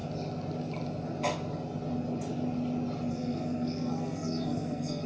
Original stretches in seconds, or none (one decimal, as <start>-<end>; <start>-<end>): 0.0-3.1